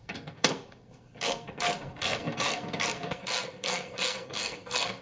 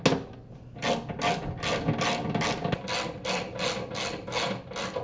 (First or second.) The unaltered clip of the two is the second